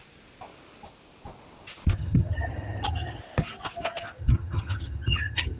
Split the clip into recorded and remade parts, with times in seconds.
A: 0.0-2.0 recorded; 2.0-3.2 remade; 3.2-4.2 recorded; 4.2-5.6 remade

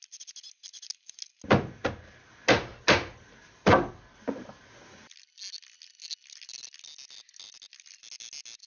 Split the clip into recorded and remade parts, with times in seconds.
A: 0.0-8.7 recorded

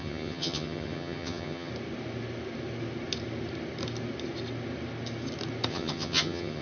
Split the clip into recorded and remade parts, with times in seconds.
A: 0.0-1.7 remade; 1.7-5.7 recorded; 5.7-6.6 remade

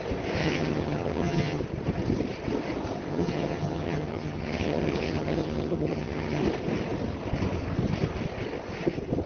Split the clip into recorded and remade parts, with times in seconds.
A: 0.0-0.4 recorded; 0.4-1.6 remade; 1.6-3.1 recorded; 3.1-6.4 remade; 6.4-9.3 recorded

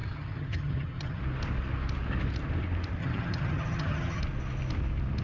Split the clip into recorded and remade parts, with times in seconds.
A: 0.0-1.2 remade; 1.2-3.0 recorded; 3.0-4.2 remade; 4.2-5.2 recorded

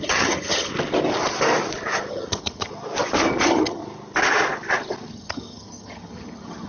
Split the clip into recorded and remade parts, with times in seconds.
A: 0.0-0.7 remade; 0.7-2.1 recorded; 2.1-2.7 remade; 2.7-3.4 recorded; 3.4-3.8 remade; 3.8-5.1 recorded; 5.1-6.7 remade